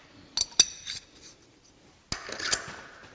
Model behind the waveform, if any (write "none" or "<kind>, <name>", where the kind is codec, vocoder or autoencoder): none